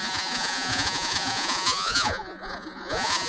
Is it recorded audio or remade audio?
remade